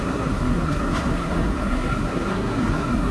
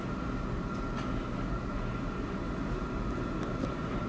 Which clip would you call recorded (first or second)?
second